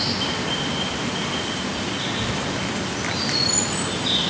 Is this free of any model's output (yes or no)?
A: yes